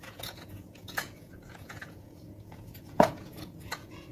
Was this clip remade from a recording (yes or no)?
yes